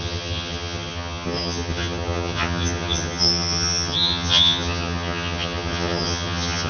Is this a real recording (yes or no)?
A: no